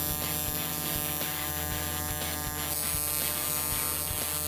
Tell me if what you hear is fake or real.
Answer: real